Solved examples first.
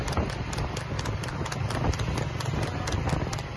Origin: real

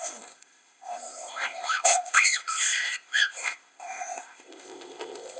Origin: fake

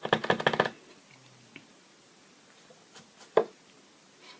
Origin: real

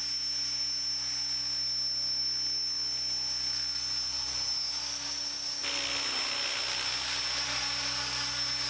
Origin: real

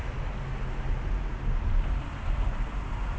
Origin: real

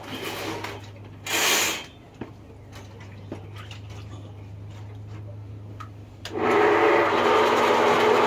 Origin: real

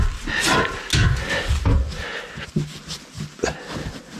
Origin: real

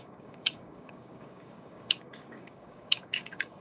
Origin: fake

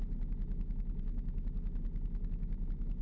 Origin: real